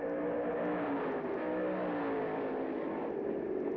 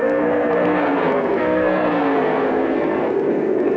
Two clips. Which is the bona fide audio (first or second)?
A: first